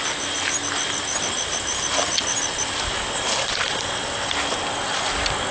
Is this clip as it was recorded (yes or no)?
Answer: yes